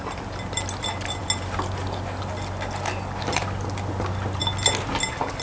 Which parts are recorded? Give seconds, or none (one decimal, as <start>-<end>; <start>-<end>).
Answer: 0.0-5.4